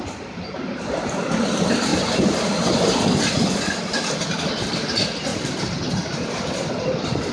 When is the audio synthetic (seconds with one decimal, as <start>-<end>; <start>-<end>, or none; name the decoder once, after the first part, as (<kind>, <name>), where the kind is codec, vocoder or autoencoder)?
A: 5.3-6.6 (vocoder, BigVGAN v2)